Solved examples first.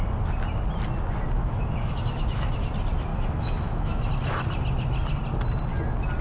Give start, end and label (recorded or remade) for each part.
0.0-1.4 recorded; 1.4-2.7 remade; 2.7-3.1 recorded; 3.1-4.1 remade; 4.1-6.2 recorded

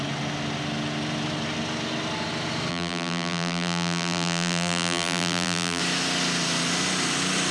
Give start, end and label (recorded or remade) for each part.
0.0-2.7 recorded; 2.7-5.8 remade; 5.8-7.5 recorded